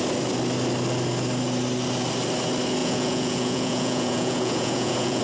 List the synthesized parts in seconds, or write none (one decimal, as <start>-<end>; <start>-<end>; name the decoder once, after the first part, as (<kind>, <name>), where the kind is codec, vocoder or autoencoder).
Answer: 2.8-5.2 (vocoder, Vocos)